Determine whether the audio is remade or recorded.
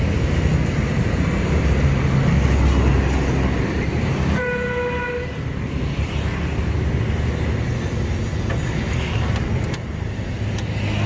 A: recorded